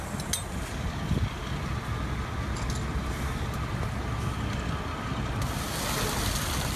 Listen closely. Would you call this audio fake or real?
real